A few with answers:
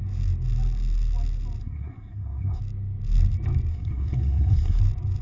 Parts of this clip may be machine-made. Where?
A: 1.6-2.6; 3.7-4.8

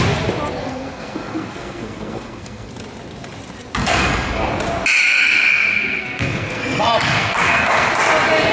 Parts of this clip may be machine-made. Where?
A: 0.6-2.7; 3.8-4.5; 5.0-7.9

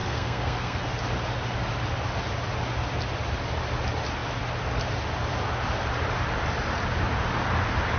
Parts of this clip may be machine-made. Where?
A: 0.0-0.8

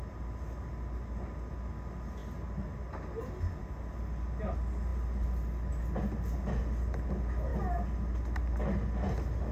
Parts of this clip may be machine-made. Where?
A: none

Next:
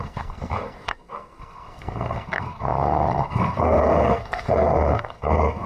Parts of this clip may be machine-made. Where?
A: 0.0-5.7

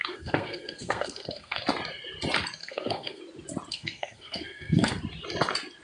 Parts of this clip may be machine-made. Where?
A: 0.0-1.6; 2.6-3.2; 3.7-4.9

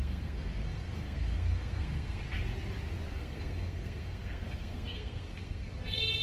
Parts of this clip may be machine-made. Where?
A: 0.0-2.2; 3.1-6.2

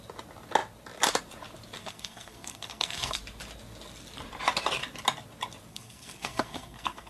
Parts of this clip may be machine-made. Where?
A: 1.8-3.2; 5.7-7.1